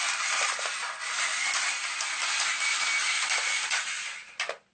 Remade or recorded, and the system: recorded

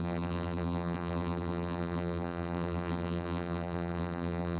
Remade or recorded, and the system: remade, vocoder, BigVGAN v2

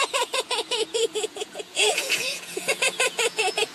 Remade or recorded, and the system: remade, vocoder, Vocos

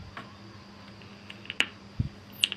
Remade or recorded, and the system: recorded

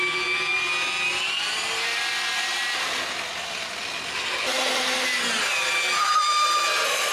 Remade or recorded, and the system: recorded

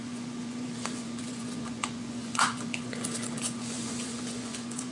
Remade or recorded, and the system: remade, vocoder, Vocos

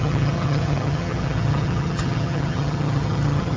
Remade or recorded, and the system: remade, vocoder, HiFi-GAN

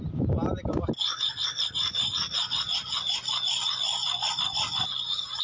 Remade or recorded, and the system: recorded